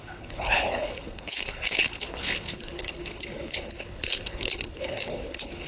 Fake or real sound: fake